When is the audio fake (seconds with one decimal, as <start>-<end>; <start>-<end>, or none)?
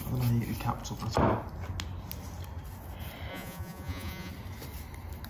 3.3-4.3